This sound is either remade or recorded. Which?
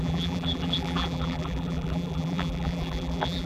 remade